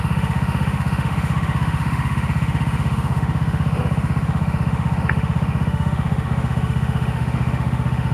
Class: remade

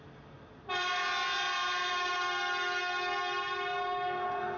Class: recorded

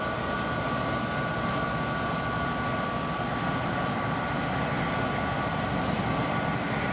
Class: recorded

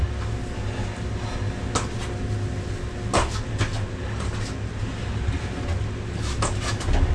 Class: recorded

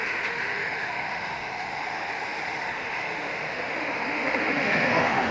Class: remade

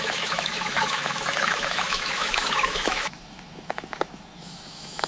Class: remade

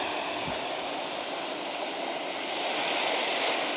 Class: recorded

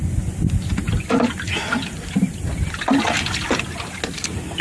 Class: recorded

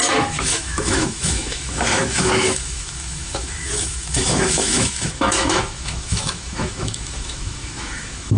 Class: remade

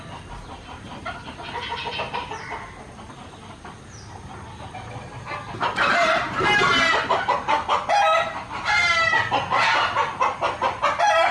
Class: recorded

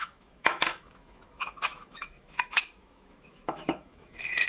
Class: remade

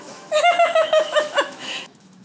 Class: remade